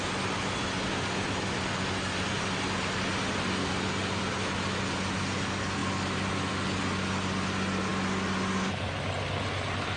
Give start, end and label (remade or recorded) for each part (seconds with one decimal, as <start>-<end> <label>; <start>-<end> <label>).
0.0-10.0 recorded